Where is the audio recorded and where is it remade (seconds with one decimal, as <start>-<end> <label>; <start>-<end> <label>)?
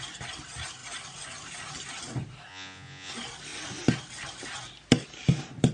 0.0-2.5 recorded; 2.5-3.1 remade; 3.1-5.7 recorded